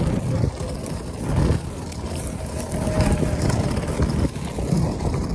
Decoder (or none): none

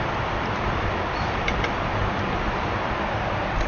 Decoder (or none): vocoder, BigVGAN v2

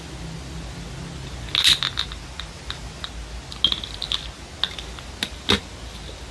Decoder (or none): none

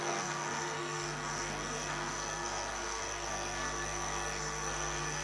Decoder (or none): codec, SNAC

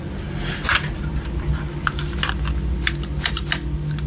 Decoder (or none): none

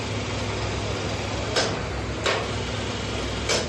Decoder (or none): none